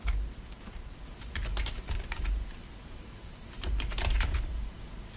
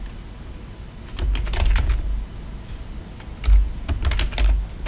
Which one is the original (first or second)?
second